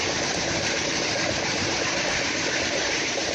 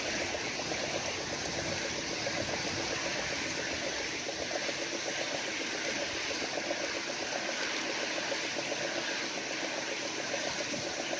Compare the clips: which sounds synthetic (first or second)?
first